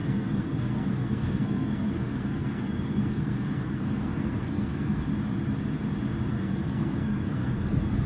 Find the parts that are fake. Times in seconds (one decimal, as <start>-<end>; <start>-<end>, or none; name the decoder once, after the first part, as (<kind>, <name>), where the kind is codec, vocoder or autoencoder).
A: 0.0-5.1 (codec, SNAC); 6.3-8.1